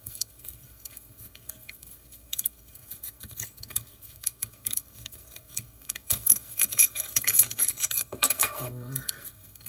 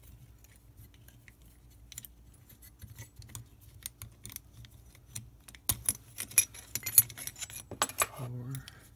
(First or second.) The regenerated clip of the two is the first